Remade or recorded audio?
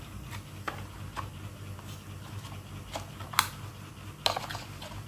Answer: recorded